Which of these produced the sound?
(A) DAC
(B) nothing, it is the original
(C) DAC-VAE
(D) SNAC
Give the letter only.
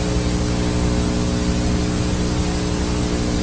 B